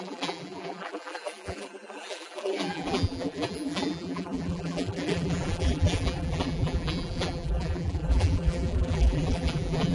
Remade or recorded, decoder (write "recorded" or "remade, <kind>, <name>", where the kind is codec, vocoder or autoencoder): remade, vocoder, BigVGAN v2